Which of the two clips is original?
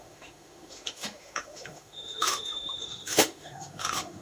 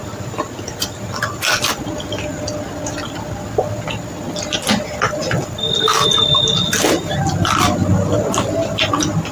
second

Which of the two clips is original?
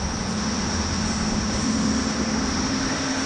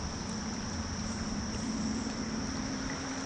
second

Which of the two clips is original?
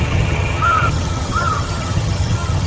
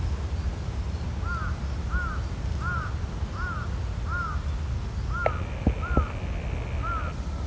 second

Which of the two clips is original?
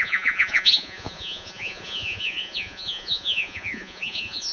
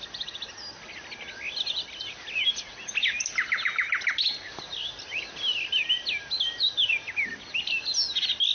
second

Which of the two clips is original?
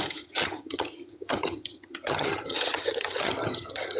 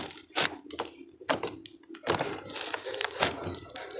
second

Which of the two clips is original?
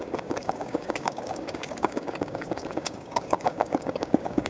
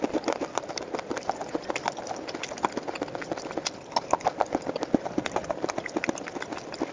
second